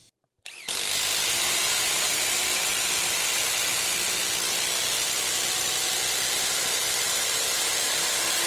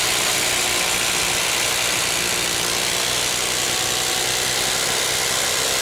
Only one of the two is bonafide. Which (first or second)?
second